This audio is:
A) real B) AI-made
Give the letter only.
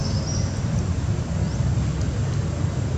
A